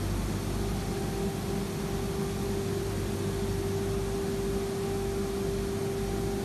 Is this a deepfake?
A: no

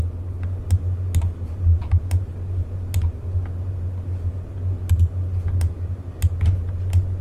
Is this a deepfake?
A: no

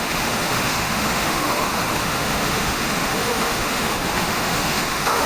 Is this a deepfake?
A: yes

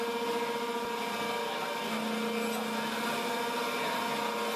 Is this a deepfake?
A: no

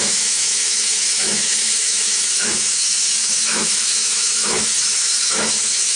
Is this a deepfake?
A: yes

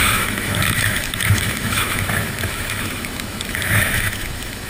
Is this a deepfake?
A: yes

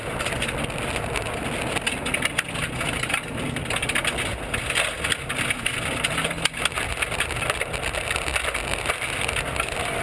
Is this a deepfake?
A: no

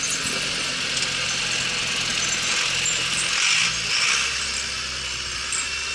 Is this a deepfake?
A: no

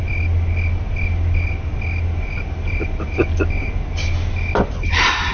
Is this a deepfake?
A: no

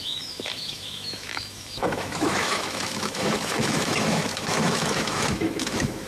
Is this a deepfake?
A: yes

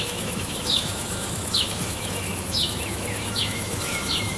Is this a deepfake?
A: yes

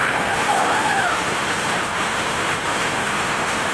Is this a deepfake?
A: yes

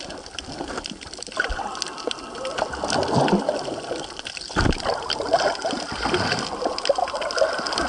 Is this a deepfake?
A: no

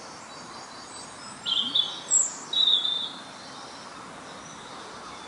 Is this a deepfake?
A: no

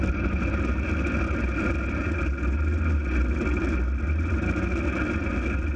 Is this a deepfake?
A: no